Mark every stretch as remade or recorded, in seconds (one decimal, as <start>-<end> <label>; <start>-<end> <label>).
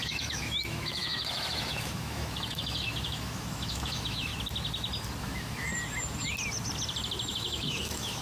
0.0-4.3 remade; 4.3-5.2 recorded; 5.2-5.7 remade; 5.7-7.3 recorded; 7.3-8.2 remade